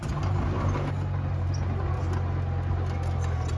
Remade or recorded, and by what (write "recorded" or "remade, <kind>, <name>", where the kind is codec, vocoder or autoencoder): recorded